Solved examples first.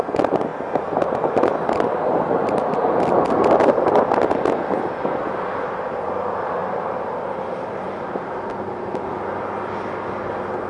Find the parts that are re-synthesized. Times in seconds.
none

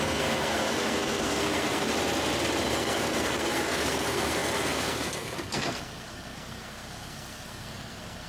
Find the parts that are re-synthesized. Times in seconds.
0.0-1.9; 2.7-8.3